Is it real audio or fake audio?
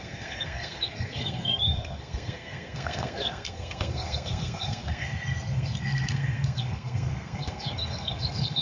fake